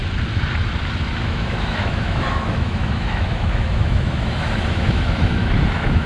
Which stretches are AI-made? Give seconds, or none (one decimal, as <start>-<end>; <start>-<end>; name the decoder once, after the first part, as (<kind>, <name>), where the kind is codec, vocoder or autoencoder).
1.1-6.1 (autoencoder, DAC-VAE)